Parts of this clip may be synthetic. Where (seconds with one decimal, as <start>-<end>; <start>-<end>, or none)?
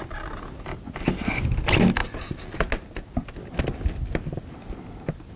none